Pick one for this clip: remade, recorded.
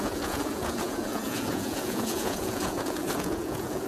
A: remade